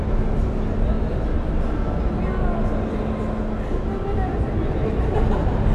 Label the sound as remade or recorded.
recorded